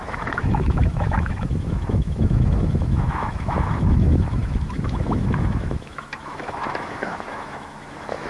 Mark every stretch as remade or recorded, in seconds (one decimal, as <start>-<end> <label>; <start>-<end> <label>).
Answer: 0.0-8.3 remade

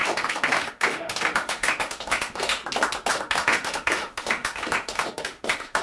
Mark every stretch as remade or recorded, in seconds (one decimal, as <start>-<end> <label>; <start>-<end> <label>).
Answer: 0.0-2.6 remade; 2.6-3.1 recorded; 3.1-5.8 remade